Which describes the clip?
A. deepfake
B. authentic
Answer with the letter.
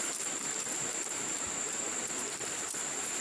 A